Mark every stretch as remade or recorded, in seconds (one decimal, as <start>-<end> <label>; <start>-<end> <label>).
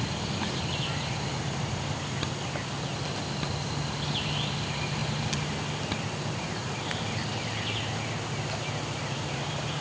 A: 0.0-9.8 recorded